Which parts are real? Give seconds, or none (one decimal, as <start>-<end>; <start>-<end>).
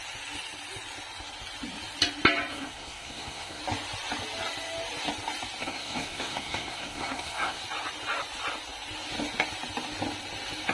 0.0-2.5; 3.6-5.6; 7.6-10.7